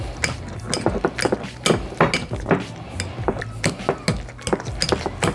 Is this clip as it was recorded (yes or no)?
yes